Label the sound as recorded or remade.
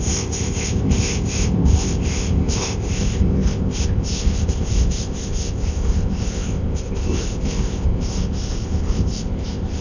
remade